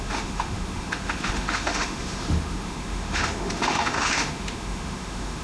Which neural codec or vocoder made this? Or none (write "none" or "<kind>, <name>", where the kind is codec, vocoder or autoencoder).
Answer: autoencoder, DAC-VAE